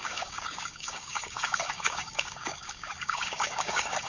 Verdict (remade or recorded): remade